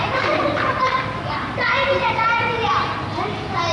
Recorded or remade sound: recorded